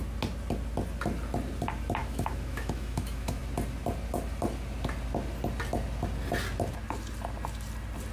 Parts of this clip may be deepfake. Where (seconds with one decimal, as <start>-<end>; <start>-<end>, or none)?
2.0-3.4